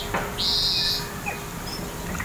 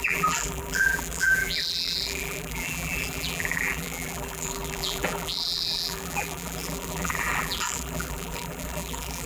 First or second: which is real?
first